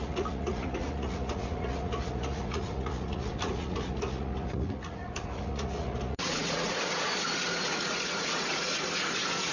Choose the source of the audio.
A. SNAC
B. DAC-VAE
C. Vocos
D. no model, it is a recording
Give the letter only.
C